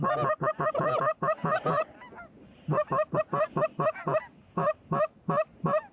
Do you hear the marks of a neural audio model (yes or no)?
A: no